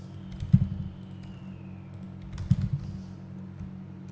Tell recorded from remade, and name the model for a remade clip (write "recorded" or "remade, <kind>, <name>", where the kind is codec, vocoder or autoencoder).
recorded